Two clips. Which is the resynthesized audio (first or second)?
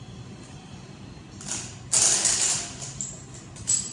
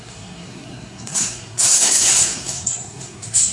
second